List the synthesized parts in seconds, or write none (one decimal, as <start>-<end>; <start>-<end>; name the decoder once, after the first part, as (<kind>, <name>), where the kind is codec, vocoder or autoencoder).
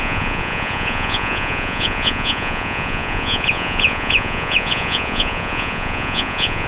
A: 0.0-6.7 (vocoder, Vocos)